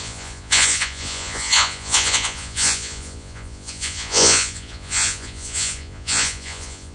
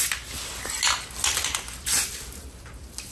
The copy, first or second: first